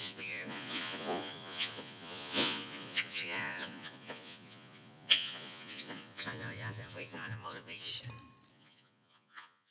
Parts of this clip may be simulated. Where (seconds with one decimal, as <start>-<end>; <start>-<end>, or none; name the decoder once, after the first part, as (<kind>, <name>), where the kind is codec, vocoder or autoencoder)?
0.0-7.9 (vocoder, Vocos); 8.5-9.7